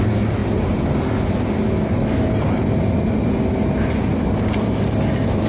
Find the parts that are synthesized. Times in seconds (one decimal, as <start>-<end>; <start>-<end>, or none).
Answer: none